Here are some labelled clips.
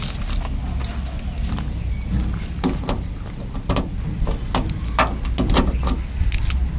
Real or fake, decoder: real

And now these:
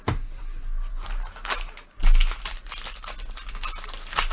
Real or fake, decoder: real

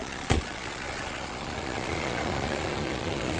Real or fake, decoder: fake, vocoder, Vocos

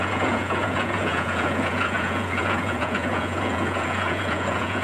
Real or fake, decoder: fake, vocoder, Vocos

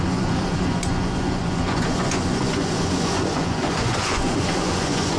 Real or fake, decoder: fake, vocoder, Vocos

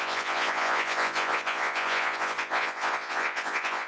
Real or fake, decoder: fake, vocoder, Vocos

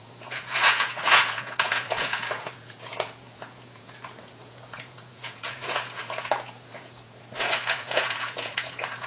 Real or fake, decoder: fake, vocoder, Vocos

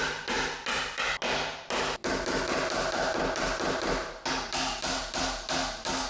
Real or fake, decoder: real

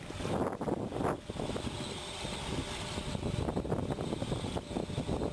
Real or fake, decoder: real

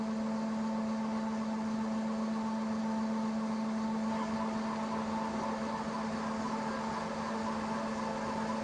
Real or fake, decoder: real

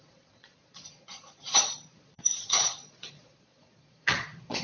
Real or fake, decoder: fake, vocoder, Vocos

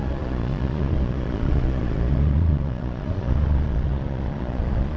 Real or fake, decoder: fake, vocoder, Vocos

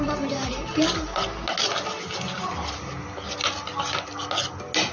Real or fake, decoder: real